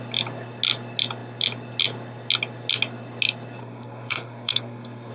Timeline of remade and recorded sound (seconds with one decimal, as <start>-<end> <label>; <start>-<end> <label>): 0.0-3.6 recorded; 3.6-5.1 remade